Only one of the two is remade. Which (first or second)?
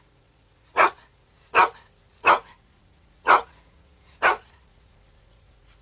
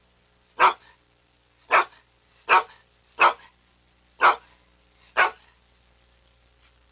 first